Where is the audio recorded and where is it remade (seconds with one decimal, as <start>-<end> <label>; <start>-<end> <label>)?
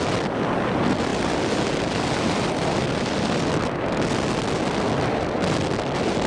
0.0-6.3 recorded